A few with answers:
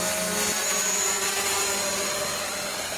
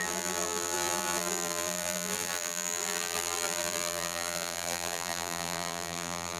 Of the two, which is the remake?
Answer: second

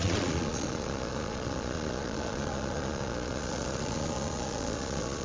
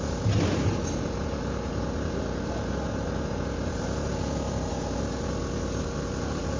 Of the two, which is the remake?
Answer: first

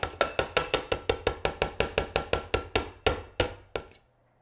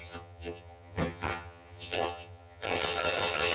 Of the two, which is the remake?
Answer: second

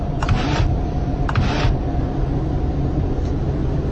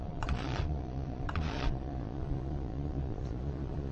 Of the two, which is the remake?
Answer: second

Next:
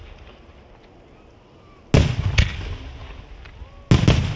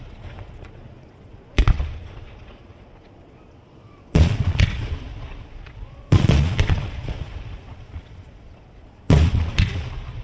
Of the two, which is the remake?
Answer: second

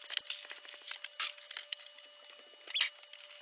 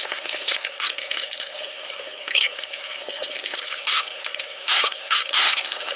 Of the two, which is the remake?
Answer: second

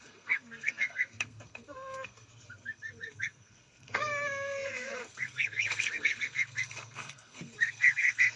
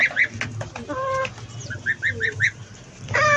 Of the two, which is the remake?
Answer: first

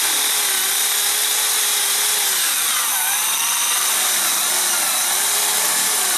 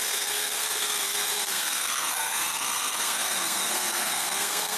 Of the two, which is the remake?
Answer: second